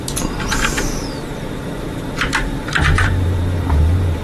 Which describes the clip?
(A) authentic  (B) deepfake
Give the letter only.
B